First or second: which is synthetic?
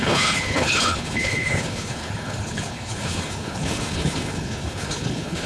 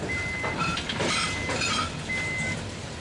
first